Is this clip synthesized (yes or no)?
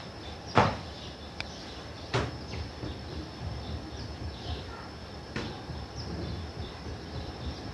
yes